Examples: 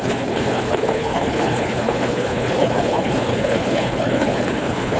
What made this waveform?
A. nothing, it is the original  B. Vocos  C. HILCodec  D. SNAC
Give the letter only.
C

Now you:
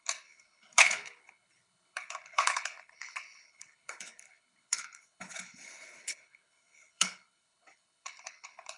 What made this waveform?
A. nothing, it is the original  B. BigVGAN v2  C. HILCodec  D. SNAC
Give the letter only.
C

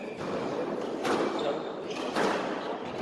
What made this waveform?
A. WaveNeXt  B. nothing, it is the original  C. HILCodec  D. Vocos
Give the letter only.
B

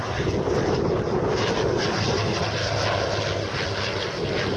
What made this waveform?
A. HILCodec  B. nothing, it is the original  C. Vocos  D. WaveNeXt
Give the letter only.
B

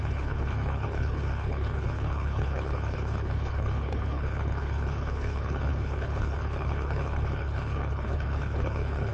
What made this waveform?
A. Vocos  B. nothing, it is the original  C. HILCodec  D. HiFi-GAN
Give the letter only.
C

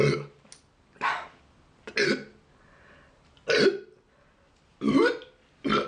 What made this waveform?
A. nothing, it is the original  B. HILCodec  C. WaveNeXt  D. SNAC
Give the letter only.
A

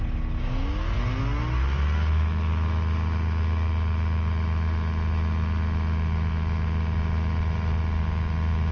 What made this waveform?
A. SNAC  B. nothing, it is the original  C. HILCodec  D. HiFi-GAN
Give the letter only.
B